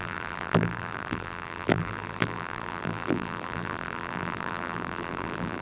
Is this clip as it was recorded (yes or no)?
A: no